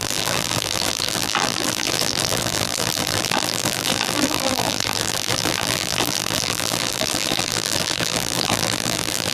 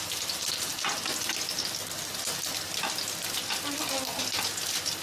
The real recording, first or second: second